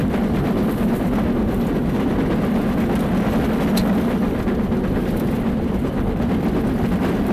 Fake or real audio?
real